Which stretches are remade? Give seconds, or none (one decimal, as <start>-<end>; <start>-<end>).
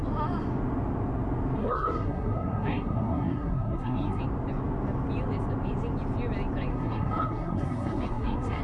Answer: 1.6-4.2; 6.7-8.6